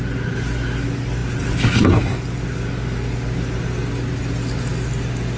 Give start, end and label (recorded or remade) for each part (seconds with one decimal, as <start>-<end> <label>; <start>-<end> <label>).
0.0-5.4 recorded